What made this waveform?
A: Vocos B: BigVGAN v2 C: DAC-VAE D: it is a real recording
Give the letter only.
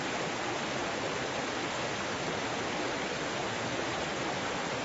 D